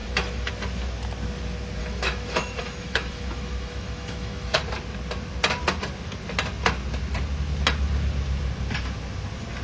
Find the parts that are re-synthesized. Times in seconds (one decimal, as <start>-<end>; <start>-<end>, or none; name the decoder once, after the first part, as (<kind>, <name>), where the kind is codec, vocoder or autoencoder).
0.0-0.5 (autoencoder, DAC-VAE); 1.8-4.6